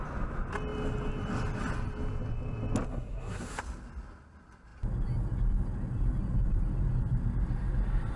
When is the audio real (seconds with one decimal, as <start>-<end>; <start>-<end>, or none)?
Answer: 0.0-2.9; 3.6-8.2